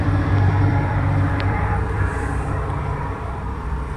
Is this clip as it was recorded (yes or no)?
no